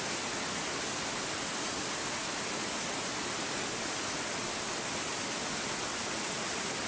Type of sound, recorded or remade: recorded